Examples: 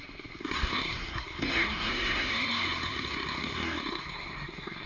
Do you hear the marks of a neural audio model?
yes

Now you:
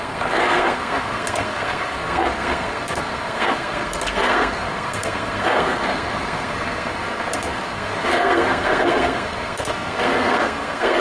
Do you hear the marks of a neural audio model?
yes